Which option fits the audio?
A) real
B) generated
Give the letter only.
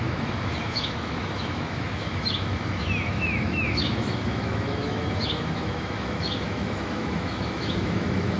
B